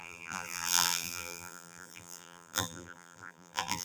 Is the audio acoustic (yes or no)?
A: no